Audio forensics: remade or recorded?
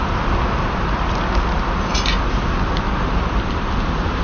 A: remade